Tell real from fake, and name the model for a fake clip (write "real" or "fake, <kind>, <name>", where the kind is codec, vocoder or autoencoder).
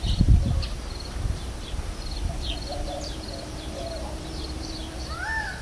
fake, vocoder, BigVGAN v2